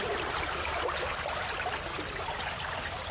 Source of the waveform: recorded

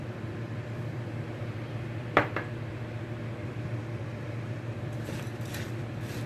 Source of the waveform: remade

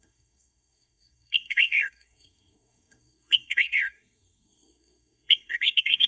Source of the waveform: remade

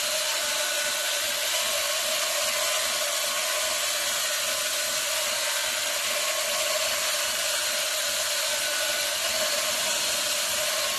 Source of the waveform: recorded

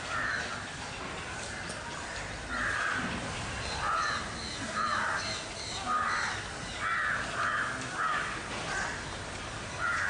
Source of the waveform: recorded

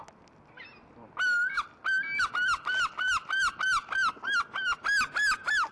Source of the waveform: recorded